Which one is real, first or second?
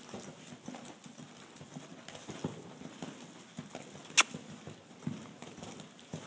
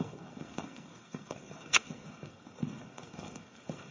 first